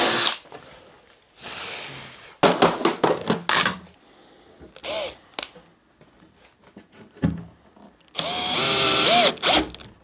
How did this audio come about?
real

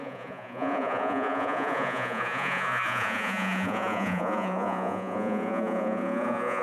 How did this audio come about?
fake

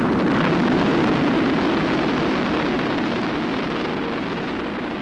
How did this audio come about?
real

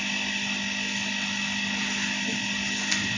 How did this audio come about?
real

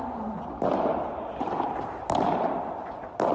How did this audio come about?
real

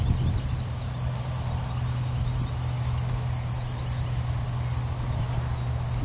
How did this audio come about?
real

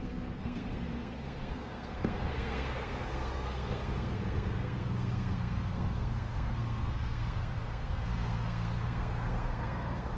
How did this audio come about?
fake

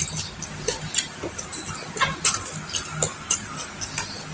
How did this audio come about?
real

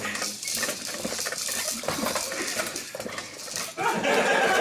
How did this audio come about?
real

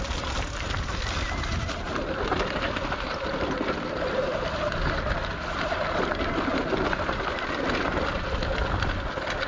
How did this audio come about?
real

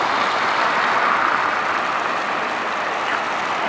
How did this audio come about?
real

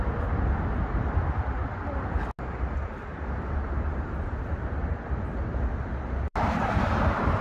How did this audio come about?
real